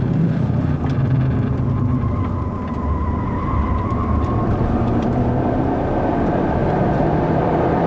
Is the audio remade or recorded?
remade